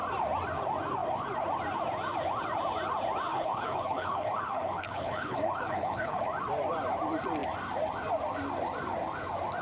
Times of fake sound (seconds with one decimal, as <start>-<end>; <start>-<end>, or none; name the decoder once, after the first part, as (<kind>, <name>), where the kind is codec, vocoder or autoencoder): 3.3-6.2 (codec, HILCodec)